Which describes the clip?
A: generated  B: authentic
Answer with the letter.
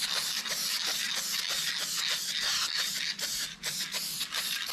B